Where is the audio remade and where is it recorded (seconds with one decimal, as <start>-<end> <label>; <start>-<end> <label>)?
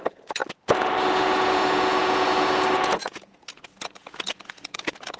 0.0-0.4 remade; 0.4-1.1 recorded; 1.1-5.2 remade